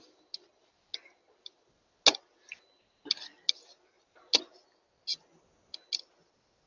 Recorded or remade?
recorded